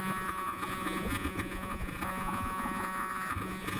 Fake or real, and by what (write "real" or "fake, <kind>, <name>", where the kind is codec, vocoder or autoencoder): fake, vocoder, Vocos